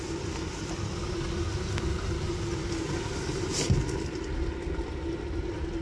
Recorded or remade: recorded